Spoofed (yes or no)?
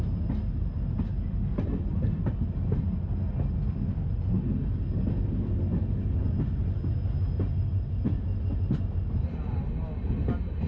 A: no